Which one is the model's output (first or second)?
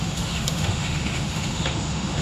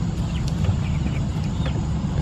first